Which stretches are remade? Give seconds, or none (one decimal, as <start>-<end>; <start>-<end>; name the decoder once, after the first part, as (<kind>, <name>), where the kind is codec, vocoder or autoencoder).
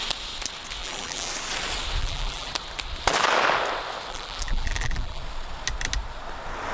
0.8-1.3 (vocoder, BigVGAN v2); 2.0-2.5; 4.1-5.2